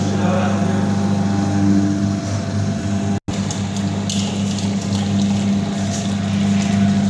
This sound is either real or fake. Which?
real